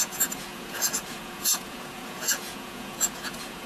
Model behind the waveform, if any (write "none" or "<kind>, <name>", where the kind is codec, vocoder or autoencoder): vocoder, Vocos